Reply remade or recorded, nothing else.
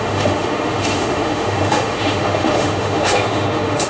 remade